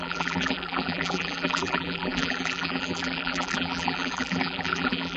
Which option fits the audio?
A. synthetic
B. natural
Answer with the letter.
A